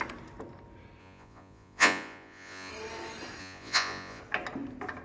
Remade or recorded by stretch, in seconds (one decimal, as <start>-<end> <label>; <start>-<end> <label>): 0.0-1.0 recorded; 1.0-2.7 remade; 2.7-3.4 recorded; 3.4-4.2 remade; 4.2-5.0 recorded